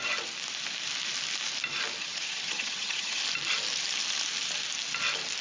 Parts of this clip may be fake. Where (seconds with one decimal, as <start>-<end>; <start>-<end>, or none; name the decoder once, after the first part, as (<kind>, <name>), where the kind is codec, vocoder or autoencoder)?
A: 2.0-3.2 (vocoder, HiFi-GAN)